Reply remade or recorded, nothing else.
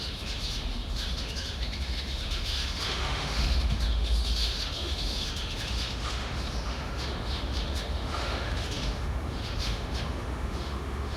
remade